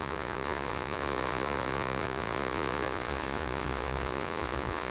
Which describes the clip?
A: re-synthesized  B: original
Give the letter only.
A